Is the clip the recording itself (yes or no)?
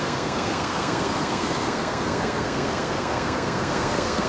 no